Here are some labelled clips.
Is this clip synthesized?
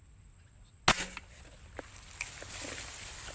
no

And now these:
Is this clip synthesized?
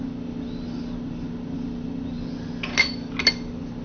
no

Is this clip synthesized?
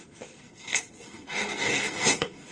yes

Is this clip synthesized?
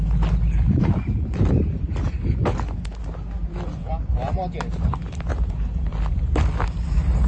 no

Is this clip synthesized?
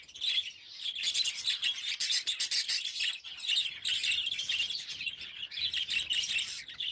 no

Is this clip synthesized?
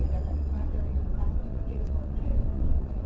yes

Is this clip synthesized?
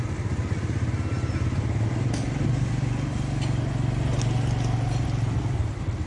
no